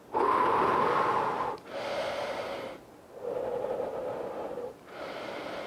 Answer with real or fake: real